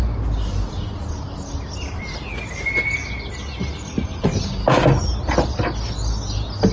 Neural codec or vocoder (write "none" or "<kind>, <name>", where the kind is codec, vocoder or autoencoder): none